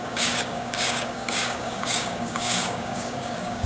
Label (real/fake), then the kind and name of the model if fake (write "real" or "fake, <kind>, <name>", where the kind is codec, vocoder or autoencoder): fake, codec, DAC